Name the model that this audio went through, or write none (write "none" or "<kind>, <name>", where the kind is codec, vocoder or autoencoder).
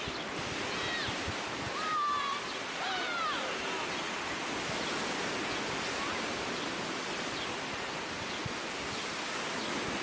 none